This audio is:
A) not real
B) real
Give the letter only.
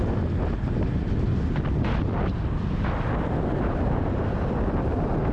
B